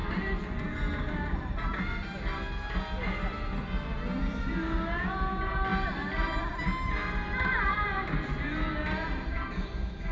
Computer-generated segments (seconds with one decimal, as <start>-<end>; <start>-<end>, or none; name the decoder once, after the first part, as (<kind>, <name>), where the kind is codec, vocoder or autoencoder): none